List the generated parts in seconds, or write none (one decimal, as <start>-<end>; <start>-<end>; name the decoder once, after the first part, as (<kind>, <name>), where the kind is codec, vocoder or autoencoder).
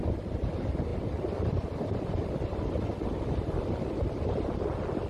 none